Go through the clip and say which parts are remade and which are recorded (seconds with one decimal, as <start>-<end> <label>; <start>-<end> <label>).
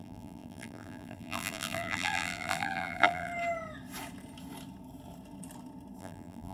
0.0-3.3 remade; 3.3-6.0 recorded; 6.0-6.5 remade